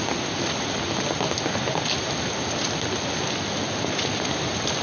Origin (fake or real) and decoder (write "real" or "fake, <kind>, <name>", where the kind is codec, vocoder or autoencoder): real